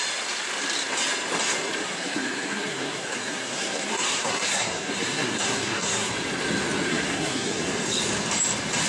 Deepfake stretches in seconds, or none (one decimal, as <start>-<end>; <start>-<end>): 1.8-6.1; 6.9-7.7

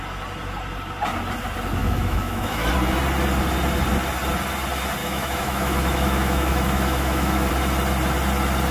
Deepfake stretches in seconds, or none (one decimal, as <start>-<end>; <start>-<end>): 1.8-2.7; 5.0-7.5

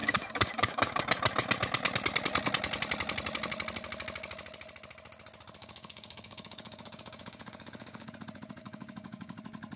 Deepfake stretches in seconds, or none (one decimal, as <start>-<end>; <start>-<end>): 0.0-1.0; 5.6-8.1; 8.6-9.4

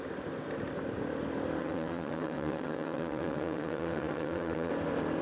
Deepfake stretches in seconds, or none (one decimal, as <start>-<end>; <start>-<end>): 1.6-4.7

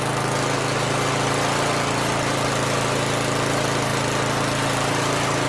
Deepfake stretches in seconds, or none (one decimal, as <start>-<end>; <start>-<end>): none

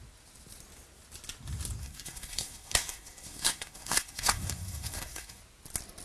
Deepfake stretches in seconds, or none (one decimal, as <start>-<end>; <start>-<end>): 1.8-5.4